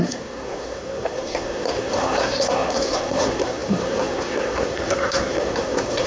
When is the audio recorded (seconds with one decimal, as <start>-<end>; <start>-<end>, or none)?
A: none